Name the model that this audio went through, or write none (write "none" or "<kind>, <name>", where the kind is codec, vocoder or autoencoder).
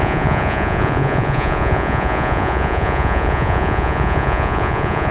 vocoder, Vocos